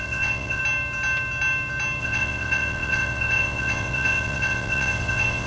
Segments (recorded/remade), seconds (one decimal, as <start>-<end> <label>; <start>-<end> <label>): 0.0-0.6 remade; 0.6-2.0 recorded; 2.0-5.5 remade